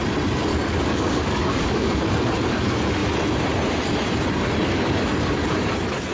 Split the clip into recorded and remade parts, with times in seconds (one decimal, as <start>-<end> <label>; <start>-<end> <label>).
0.0-0.5 recorded; 0.5-2.0 remade; 2.0-6.1 recorded